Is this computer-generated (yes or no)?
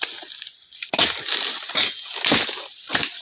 no